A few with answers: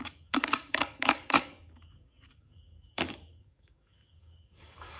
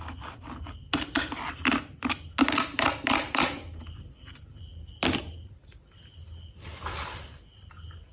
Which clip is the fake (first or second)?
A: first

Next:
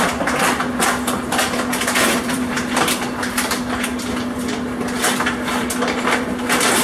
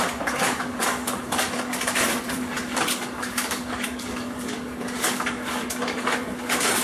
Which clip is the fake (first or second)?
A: second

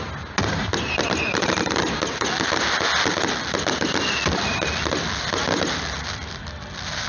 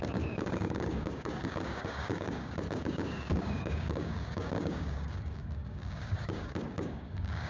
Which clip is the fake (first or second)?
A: second